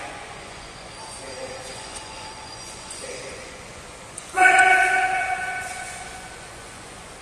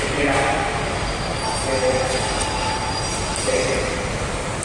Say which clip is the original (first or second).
second